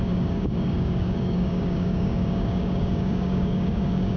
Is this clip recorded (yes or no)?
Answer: no